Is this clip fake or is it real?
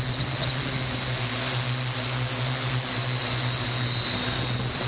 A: real